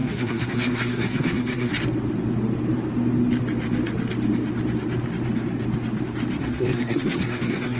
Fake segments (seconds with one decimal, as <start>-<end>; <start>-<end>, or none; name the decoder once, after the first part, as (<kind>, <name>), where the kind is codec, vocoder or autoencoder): 0.0-1.7 (codec, SNAC); 6.4-7.8